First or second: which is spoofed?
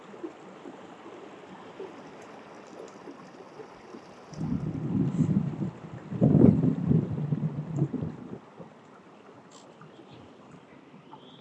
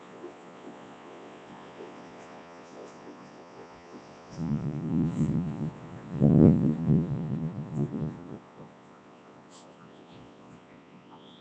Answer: second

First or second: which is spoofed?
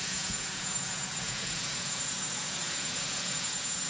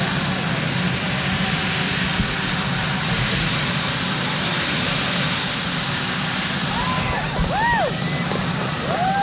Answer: first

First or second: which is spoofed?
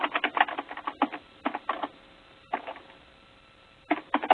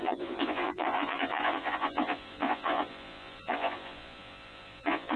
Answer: second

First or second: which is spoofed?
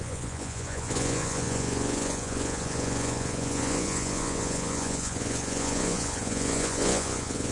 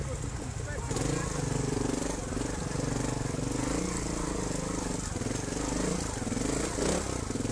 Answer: first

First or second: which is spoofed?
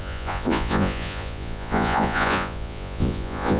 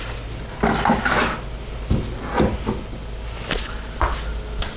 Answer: first